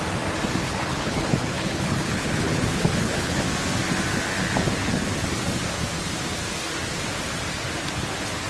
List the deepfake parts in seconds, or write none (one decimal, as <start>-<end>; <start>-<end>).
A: 0.6-3.4